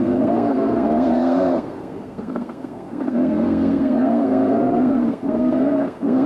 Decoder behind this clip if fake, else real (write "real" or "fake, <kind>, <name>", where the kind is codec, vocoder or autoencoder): fake, codec, SNAC